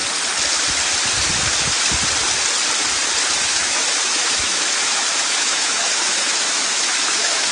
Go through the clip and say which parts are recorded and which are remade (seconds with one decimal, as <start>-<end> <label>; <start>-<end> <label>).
0.0-3.3 recorded; 3.3-7.5 remade